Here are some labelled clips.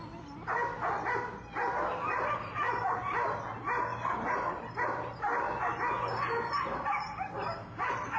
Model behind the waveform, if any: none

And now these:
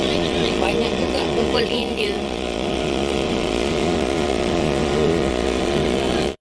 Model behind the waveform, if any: vocoder, Vocos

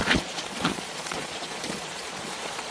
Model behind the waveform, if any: vocoder, Vocos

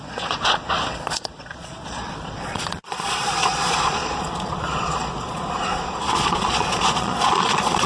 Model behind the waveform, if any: vocoder, Vocos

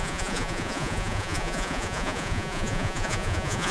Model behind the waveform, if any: vocoder, Vocos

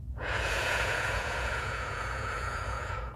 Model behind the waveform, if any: vocoder, Vocos